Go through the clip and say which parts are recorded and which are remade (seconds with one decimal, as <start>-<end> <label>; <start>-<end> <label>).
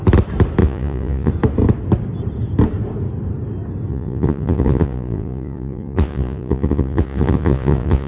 0.0-0.6 recorded; 0.6-1.3 remade; 1.3-3.9 recorded; 3.9-8.1 remade